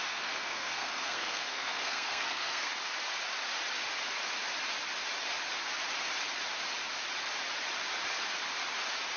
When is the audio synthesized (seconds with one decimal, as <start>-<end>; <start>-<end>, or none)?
0.0-2.7